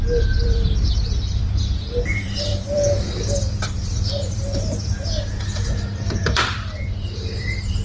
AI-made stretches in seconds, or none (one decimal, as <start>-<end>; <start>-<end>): 0.0-7.8